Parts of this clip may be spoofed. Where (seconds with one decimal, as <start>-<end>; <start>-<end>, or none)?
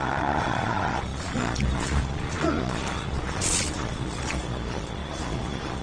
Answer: 0.0-5.8